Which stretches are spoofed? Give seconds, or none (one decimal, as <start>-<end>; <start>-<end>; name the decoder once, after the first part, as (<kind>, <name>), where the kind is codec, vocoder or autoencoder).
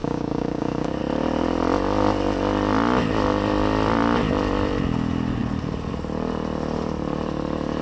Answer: 0.0-1.0 (codec, DAC)